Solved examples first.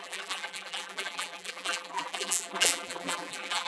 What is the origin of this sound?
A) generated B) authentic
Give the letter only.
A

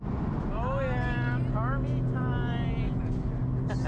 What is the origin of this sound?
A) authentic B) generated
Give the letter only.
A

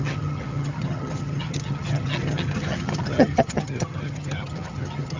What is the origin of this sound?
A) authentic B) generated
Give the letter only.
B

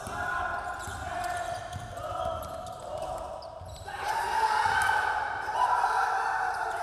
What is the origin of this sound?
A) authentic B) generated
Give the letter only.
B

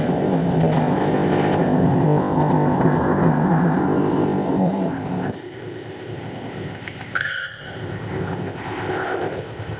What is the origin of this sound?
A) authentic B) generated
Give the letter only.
B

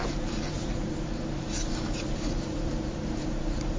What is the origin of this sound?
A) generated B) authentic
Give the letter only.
A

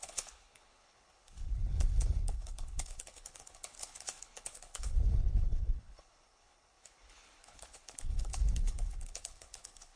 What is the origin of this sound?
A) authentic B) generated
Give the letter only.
B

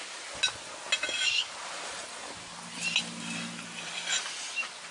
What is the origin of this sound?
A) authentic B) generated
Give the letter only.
A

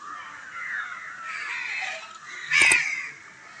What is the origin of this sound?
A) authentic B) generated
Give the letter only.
A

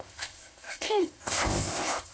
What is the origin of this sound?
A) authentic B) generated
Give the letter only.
B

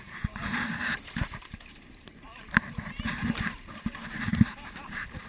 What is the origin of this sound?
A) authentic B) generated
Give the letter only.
B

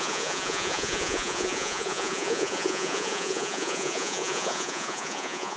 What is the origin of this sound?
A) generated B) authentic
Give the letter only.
A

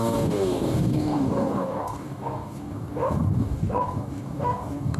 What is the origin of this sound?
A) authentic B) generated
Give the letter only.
B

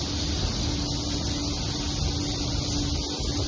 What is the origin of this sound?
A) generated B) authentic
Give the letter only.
B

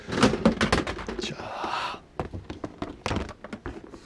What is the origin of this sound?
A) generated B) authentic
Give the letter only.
B